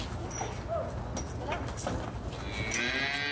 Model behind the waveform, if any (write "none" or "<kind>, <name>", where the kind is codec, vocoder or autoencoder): none